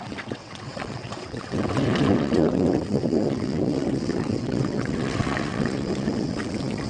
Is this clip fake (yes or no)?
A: yes